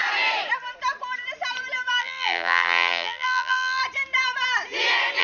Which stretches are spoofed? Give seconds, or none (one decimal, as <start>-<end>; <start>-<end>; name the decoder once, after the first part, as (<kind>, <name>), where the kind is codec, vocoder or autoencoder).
2.0-3.8 (vocoder, BigVGAN v2)